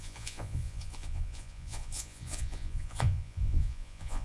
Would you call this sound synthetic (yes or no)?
yes